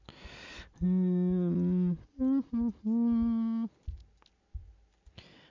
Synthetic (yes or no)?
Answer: no